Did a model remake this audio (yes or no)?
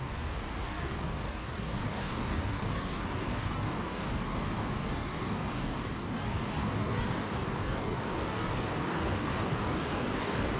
yes